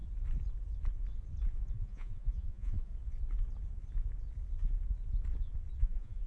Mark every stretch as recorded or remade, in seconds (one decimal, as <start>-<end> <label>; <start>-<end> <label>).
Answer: 0.0-1.7 recorded; 1.7-2.9 remade; 2.9-5.8 recorded; 5.8-6.3 remade